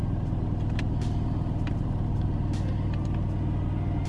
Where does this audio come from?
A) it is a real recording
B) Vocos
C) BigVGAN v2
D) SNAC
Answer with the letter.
A